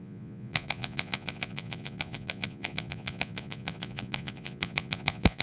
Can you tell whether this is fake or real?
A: fake